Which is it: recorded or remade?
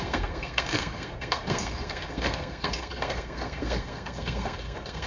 remade